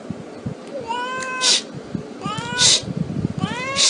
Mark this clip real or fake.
real